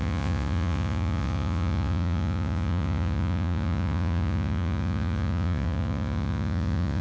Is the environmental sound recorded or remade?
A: remade